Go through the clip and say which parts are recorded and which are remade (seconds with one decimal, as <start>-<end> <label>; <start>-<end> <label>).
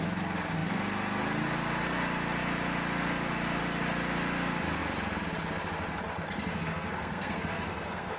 0.0-6.5 recorded; 6.5-8.2 remade